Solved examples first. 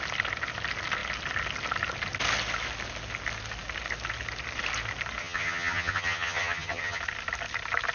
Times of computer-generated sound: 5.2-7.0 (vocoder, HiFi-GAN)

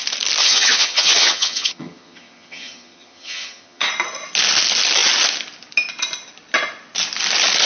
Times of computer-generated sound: 0.4-3.9 (vocoder, HiFi-GAN)

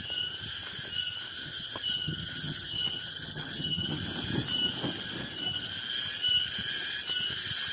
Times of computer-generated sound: 1.4-4.0 (vocoder, HiFi-GAN)

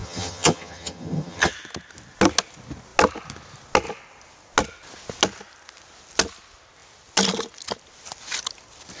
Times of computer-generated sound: 0.0-1.5 (vocoder, HiFi-GAN)

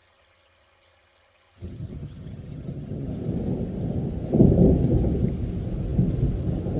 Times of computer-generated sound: 0.0-3.1 (vocoder, HiFi-GAN)

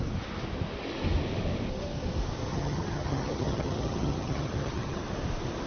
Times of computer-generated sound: 2.5-5.0 (vocoder, HiFi-GAN)

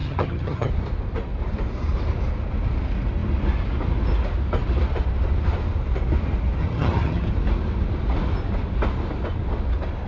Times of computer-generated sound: 0.0-0.7 (vocoder, HiFi-GAN); 6.6-7.3

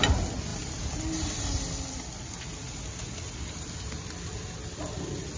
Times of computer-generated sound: none